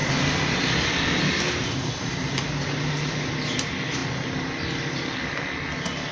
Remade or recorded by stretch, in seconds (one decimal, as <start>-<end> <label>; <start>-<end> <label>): 0.0-6.1 recorded